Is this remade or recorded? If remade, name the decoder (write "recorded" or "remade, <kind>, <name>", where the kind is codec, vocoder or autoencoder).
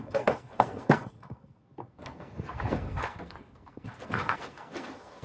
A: remade, codec, SNAC